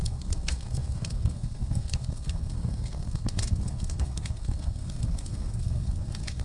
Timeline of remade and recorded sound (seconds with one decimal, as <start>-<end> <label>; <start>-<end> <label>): 0.0-6.4 remade